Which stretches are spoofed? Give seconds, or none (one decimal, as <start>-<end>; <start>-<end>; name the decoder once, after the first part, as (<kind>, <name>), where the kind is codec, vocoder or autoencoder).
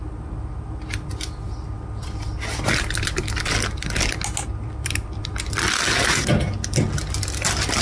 0.0-3.1 (vocoder, BigVGAN v2); 4.5-5.3